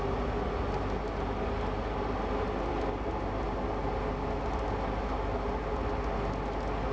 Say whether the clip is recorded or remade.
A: recorded